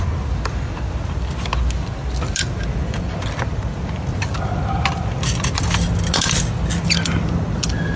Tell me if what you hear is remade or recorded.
recorded